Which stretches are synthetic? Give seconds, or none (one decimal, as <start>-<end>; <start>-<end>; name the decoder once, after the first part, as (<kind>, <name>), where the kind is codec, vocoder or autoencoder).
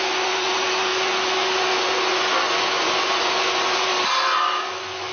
0.0-3.9 (vocoder, Vocos); 4.6-5.1